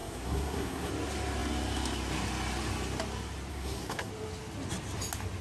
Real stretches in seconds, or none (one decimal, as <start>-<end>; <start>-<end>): 0.9-3.5; 4.1-5.4